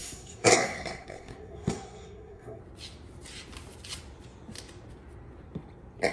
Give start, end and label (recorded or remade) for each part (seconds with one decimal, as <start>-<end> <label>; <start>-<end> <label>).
0.0-2.6 remade; 2.6-6.1 recorded